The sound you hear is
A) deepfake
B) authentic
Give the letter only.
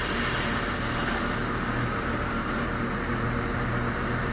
A